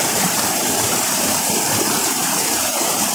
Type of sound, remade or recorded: remade